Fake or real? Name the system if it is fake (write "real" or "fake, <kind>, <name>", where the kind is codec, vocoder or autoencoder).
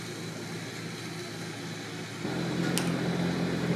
real